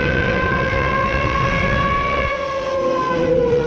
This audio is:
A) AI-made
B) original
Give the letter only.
A